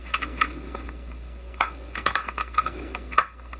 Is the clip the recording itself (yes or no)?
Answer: no